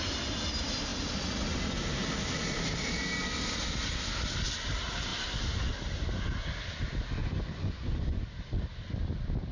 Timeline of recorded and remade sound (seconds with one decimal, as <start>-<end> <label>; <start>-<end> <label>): 0.0-7.2 recorded; 7.2-8.2 remade; 8.2-9.5 recorded